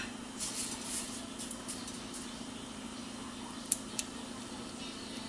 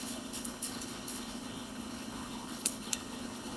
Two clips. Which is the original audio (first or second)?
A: first